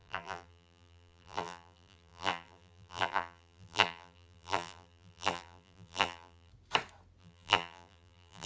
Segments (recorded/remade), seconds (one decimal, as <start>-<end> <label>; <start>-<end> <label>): 0.0-6.5 remade; 6.5-7.2 recorded; 7.2-8.5 remade